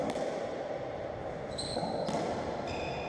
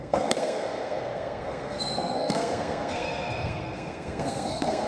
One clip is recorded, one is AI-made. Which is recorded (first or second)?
first